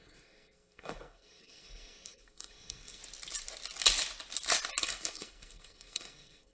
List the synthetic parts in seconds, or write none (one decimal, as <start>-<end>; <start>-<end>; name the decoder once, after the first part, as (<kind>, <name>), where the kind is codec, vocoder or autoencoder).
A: 0.0-3.0 (codec, SNAC); 4.8-6.5